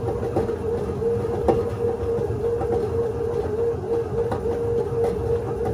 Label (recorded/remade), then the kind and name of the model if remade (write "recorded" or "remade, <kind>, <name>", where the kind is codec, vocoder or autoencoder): recorded